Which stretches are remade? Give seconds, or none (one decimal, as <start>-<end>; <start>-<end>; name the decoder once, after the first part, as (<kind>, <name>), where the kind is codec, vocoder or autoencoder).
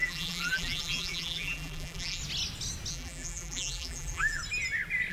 0.0-2.2 (vocoder, BigVGAN v2); 2.9-4.4